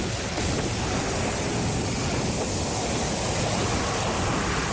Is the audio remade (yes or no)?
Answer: no